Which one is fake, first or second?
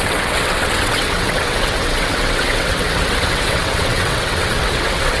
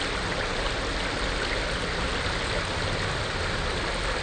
first